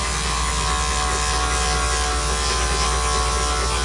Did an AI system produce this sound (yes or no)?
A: no